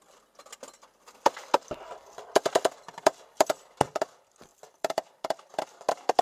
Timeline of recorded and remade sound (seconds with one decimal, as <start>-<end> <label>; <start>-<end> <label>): 0.0-3.6 remade; 3.6-4.5 recorded; 4.5-5.5 remade; 5.5-6.2 recorded